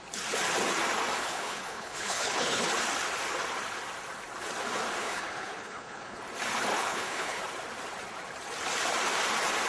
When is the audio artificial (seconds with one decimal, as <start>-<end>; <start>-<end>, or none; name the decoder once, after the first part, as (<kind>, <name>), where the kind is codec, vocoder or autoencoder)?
1.2-2.7 (codec, HILCodec); 5.0-6.2; 6.7-7.4